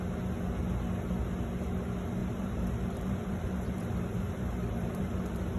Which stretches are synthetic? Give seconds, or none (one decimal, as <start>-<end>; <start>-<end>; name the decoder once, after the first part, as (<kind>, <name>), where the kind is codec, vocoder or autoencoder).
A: 2.2-5.6 (vocoder, BigVGAN v2)